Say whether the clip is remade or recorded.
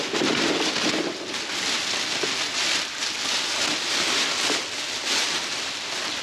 recorded